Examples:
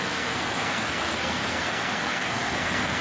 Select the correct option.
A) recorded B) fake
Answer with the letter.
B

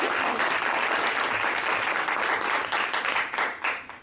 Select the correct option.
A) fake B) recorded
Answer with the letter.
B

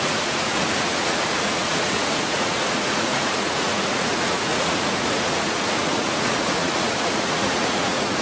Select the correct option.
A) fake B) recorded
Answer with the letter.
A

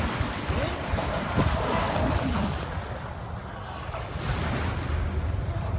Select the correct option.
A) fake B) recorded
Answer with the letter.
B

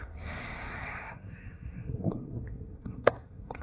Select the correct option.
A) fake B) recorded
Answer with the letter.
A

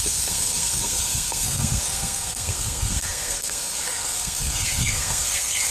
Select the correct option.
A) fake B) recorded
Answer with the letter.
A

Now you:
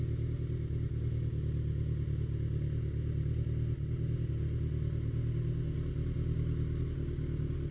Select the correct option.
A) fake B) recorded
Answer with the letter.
B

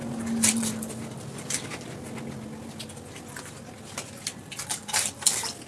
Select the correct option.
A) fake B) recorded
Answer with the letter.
B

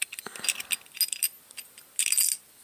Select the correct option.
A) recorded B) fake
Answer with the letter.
A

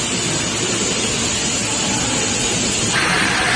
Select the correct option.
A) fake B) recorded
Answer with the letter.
B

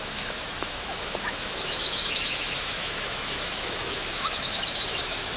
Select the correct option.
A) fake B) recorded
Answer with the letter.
A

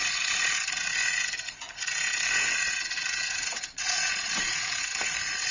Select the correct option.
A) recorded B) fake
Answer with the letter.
B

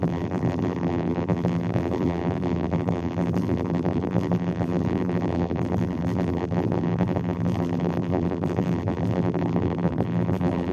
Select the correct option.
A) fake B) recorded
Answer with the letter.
A